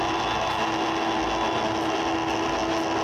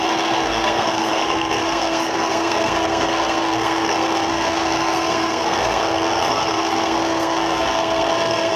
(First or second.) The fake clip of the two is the second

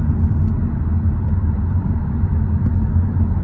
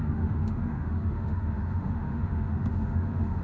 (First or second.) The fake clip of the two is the second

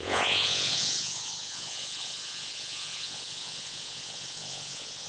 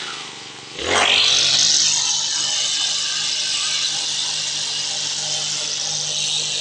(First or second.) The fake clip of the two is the first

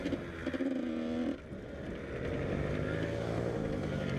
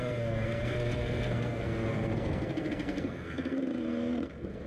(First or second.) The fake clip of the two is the second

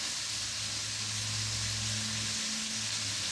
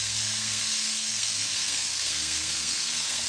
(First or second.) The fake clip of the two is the second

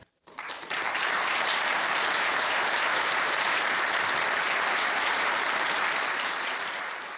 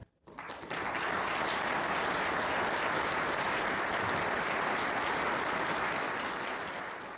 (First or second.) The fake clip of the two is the first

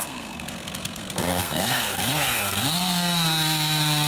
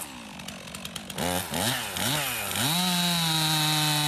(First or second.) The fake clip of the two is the first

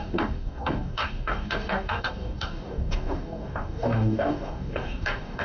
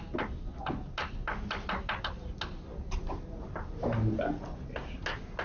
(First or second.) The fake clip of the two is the first